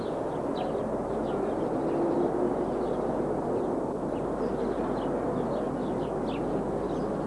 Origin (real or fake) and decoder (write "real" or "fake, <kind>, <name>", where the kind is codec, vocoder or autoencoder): real